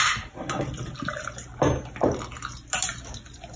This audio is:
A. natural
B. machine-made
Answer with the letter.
A